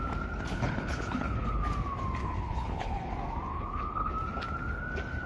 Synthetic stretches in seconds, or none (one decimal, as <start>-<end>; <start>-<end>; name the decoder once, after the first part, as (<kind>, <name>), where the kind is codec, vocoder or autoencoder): 0.5-1.6 (codec, HILCodec); 2.2-3.1; 3.5-4.1